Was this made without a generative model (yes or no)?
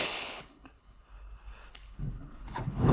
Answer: no